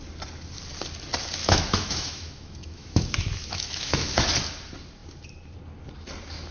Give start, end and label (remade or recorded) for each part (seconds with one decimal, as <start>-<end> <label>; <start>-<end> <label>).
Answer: 0.0-1.4 recorded; 1.4-4.2 remade; 4.2-6.5 recorded